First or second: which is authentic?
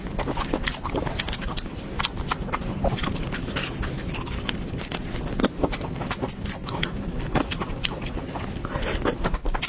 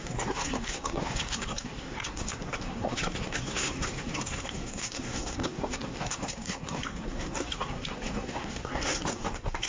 first